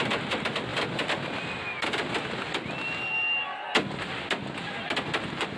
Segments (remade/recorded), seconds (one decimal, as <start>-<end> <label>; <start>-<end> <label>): 0.0-5.6 recorded